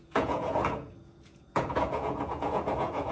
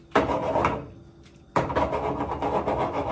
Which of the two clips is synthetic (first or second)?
first